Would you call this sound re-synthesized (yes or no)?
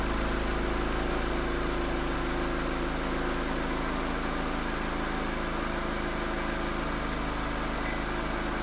no